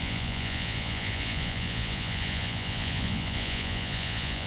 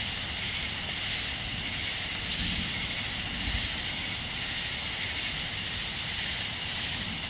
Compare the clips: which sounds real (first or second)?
second